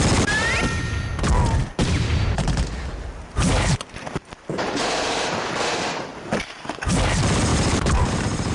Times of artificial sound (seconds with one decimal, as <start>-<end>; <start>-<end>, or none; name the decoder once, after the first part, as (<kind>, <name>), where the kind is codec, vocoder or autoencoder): 1.8-5.3 (vocoder, BigVGAN v2); 6.1-6.9; 7.5-8.5